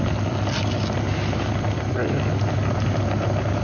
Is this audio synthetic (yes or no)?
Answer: no